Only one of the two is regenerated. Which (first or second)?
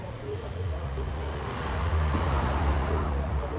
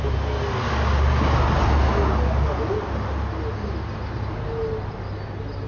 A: first